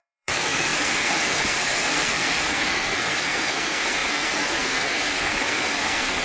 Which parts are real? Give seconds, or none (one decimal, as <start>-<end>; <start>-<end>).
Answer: none